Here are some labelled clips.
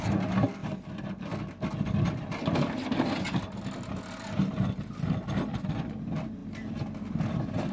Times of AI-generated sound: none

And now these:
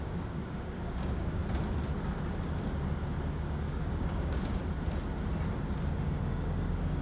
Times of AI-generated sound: 0.0-1.4 (codec, DAC); 3.3-4.6; 6.0-7.0

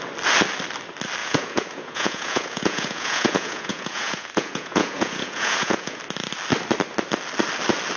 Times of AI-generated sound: 1.2-6.0 (vocoder, Vocos)

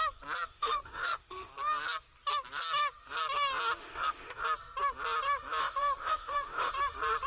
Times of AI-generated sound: 0.5-1.5 (autoencoder, DAC-VAE); 3.8-4.4; 5.6-6.7

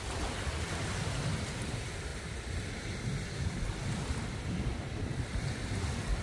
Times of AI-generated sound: none

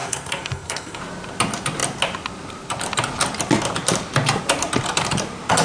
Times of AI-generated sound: 0.0-1.0 (codec, SNAC)